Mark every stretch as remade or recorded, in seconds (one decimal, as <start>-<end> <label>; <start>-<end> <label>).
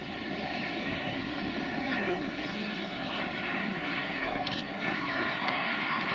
0.0-0.8 recorded; 0.8-1.4 remade; 1.4-1.8 recorded; 1.8-3.2 remade; 3.2-3.6 recorded; 3.6-6.1 remade